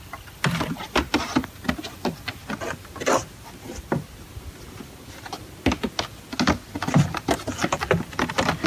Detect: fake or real real